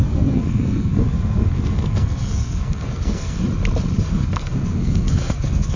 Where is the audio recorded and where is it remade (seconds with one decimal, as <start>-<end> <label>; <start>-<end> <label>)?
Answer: 0.0-3.4 remade; 3.4-4.1 recorded; 4.1-5.8 remade